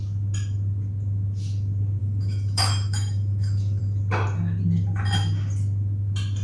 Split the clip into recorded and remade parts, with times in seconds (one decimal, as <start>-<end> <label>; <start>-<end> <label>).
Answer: 0.0-2.0 recorded; 2.0-3.8 remade; 3.8-6.4 recorded